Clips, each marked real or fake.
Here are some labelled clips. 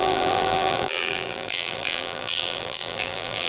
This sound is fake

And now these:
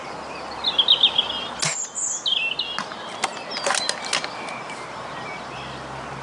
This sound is real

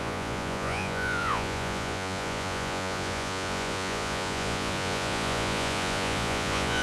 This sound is fake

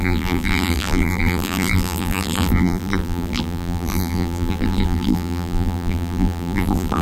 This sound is fake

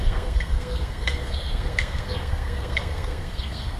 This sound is fake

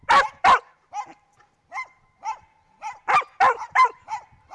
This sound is real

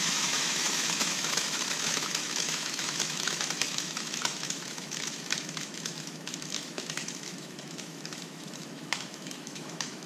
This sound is fake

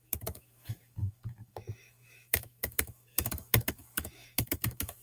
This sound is fake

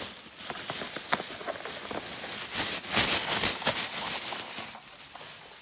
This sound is real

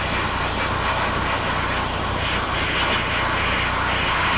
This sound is real